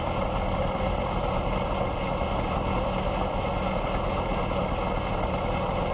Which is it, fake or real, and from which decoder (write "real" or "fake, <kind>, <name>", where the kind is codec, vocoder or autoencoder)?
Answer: real